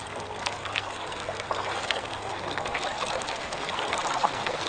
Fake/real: fake